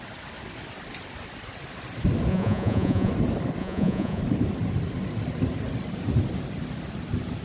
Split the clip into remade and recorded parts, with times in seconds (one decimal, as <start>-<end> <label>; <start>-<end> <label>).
0.0-2.3 recorded; 2.3-3.1 remade; 3.1-3.6 recorded; 3.6-4.2 remade; 4.2-7.4 recorded